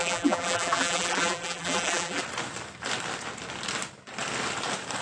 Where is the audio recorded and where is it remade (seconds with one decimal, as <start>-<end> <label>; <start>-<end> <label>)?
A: 0.0-2.2 remade; 2.2-5.0 recorded